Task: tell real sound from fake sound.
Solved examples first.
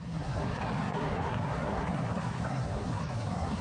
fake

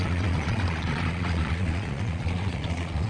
fake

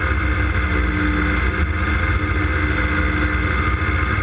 real